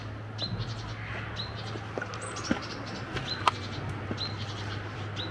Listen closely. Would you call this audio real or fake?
real